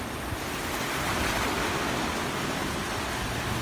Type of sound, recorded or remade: recorded